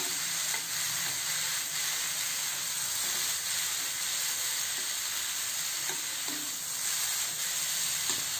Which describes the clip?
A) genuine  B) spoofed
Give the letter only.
A